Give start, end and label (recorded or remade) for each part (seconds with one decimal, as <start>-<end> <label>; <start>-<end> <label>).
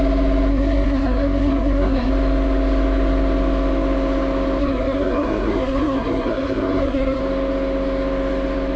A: 0.0-0.5 recorded; 0.5-2.1 remade; 2.1-4.6 recorded; 4.6-7.2 remade; 7.2-8.8 recorded